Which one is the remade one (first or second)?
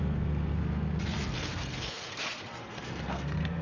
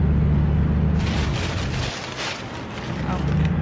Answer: first